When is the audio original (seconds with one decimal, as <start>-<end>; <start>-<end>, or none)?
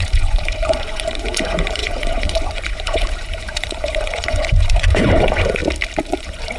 5.6-6.1